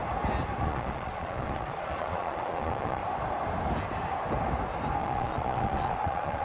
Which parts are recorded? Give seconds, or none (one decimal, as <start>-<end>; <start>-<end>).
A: 0.0-0.6; 3.0-5.0